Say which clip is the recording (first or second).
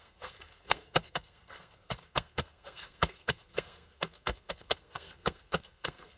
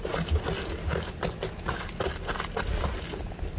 second